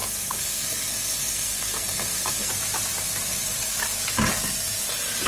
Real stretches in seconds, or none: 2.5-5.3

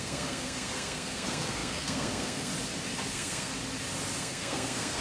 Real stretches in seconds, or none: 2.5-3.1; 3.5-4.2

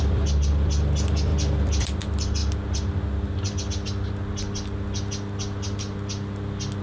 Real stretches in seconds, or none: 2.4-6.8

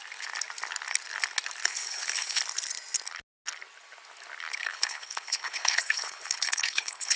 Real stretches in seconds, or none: 0.0-1.7; 2.4-4.6